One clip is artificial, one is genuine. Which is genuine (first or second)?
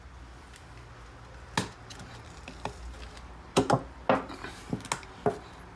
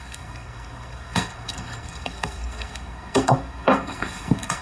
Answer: first